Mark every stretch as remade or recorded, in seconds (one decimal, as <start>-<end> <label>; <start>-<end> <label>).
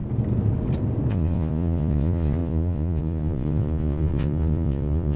0.0-1.1 recorded; 1.1-5.2 remade